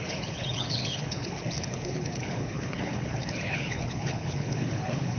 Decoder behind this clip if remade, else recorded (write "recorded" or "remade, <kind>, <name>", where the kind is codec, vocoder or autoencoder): remade, codec, HILCodec